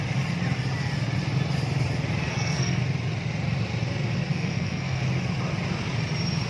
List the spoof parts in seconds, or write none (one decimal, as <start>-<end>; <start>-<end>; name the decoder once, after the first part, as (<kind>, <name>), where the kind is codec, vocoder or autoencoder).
2.3-2.8 (codec, SNAC); 4.3-5.0